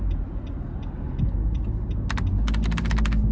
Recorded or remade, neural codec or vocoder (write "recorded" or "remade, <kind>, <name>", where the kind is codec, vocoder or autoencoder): recorded